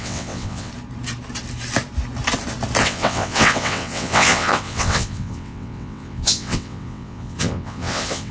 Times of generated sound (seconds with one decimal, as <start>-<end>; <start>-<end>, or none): 0.0-0.7; 2.8-8.3